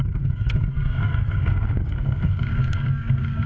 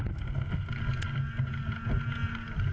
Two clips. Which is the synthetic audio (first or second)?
first